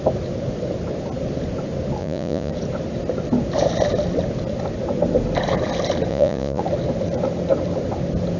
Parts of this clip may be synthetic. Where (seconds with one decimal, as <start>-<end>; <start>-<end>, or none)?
2.0-2.5; 6.1-6.6